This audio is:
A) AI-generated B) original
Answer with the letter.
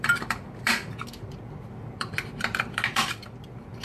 A